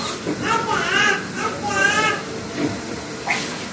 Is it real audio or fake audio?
real